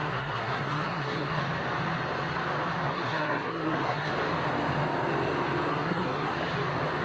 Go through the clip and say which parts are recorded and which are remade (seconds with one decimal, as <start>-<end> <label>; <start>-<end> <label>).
0.0-1.4 remade; 1.4-2.9 recorded; 2.9-4.1 remade; 4.1-5.7 recorded; 5.7-6.3 remade; 6.3-7.0 recorded